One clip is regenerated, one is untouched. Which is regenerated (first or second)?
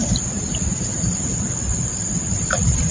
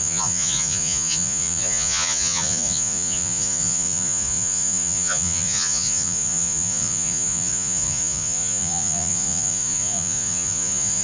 second